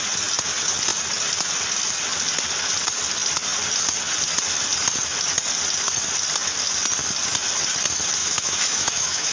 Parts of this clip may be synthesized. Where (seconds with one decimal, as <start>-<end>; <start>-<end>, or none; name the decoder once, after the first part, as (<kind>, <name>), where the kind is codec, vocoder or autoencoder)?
8.2-9.3 (autoencoder, DAC-VAE)